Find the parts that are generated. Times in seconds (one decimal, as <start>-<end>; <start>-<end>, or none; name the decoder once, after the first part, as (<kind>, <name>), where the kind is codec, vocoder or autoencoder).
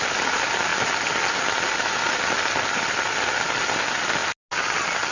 none